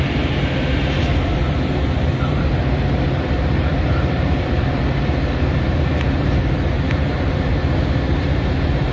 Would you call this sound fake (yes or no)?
yes